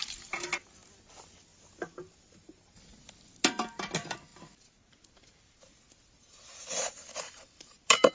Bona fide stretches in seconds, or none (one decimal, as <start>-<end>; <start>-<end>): 0.5-4.3